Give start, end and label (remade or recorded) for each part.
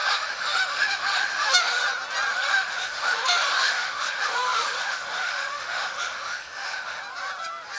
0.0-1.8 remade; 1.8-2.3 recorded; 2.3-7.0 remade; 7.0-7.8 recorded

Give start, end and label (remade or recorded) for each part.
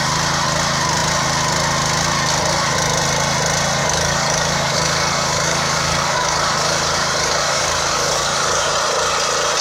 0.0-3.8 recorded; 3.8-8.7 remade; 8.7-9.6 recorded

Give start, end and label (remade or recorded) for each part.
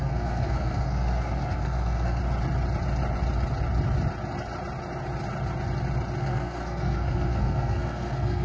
0.0-2.2 remade; 2.2-6.2 recorded; 6.2-8.4 remade